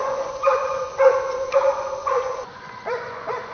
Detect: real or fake fake